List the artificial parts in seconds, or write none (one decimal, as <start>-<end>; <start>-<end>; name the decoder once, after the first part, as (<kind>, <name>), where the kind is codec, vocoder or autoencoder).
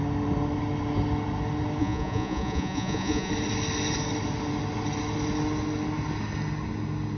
1.8-3.3 (vocoder, Vocos)